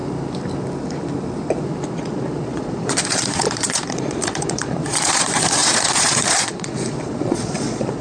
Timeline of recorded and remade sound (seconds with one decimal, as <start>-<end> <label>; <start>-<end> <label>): 0.0-1.9 recorded; 1.9-8.0 remade